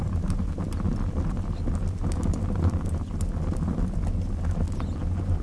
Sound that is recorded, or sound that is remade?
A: recorded